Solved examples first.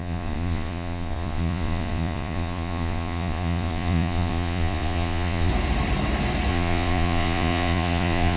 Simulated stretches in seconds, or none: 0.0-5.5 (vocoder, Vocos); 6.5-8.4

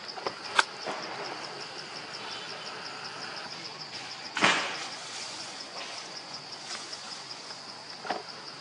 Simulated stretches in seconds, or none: 3.7-7.9 (vocoder, Vocos)

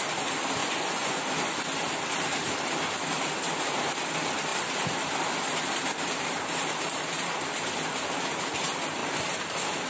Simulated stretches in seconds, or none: 0.6-1.2 (vocoder, Vocos)

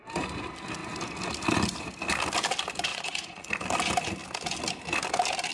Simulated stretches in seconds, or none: 2.9-3.5 (vocoder, Vocos)

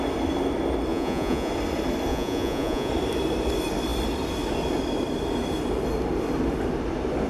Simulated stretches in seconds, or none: 0.9-1.5 (vocoder, Vocos); 2.1-2.9

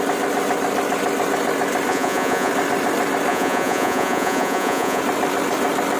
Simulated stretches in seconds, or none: 1.9-2.5 (vocoder, Vocos); 3.3-5.0

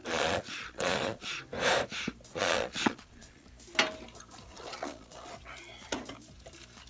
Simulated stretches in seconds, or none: 0.0-1.4 (vocoder, Vocos); 2.3-3.5; 4.5-5.3

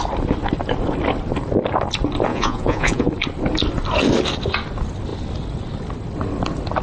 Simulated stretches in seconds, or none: 2.3-3.1 (vocoder, Vocos)